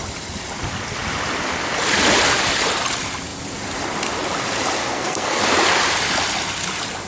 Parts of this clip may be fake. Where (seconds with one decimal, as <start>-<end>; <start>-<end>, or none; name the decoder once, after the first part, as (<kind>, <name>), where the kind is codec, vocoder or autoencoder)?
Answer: 4.8-5.4 (codec, SNAC)